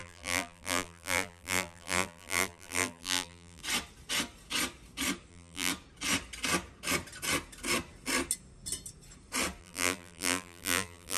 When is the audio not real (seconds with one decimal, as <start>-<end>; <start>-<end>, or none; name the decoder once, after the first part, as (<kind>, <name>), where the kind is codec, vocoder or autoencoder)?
0.0-3.6 (vocoder, BigVGAN v2); 5.3-5.7; 9.6-11.2